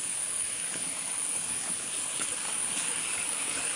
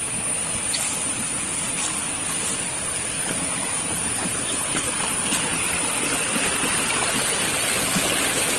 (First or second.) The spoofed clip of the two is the first